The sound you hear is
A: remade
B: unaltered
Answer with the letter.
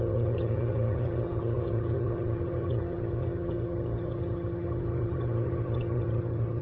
A